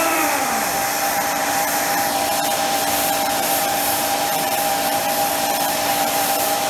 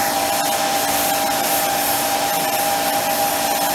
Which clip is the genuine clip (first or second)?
second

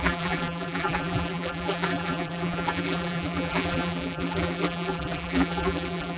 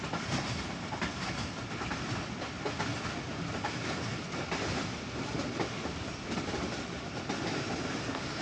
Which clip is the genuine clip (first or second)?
second